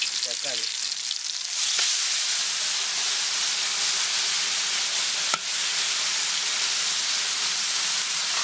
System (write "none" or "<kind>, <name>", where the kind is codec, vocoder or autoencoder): none